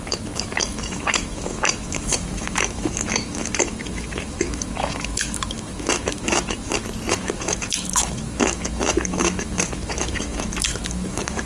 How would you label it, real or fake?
fake